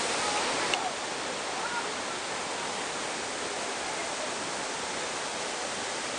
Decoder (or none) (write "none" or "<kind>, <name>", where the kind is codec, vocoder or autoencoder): none